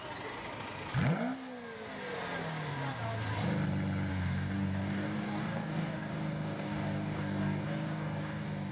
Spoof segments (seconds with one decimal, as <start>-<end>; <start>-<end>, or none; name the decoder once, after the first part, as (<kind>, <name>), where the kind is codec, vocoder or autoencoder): 4.1-8.7 (codec, DAC)